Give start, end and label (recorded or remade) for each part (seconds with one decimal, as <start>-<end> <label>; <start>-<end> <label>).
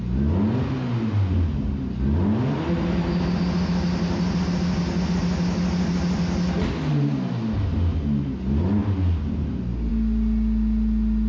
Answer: 0.0-11.3 recorded